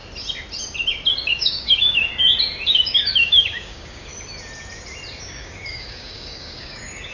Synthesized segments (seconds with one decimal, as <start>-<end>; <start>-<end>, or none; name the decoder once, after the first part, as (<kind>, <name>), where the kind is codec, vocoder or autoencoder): 1.1-2.1 (codec, DAC); 2.7-4.1; 5.2-7.1